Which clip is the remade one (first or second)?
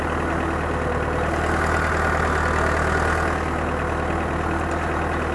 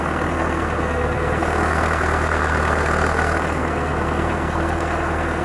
second